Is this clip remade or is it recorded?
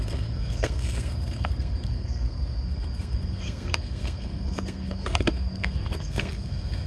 remade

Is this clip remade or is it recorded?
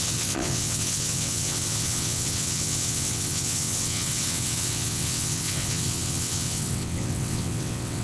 remade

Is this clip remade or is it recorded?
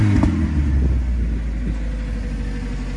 recorded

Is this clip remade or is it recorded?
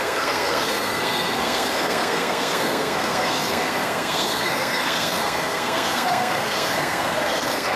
remade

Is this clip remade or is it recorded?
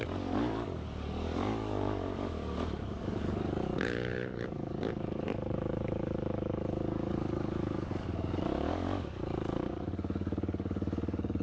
remade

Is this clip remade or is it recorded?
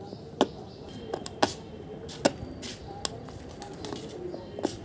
recorded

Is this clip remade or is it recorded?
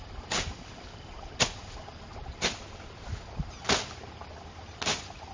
recorded